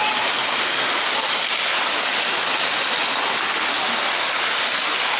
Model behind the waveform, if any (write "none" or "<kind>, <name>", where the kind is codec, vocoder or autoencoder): none